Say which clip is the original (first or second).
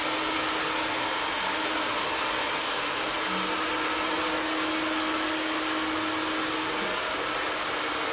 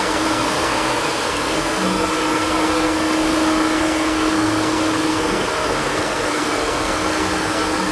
first